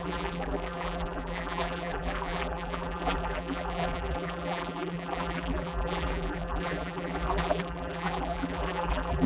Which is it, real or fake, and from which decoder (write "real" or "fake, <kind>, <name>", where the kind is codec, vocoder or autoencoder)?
fake, vocoder, BigVGAN v2